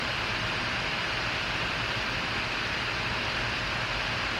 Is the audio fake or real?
real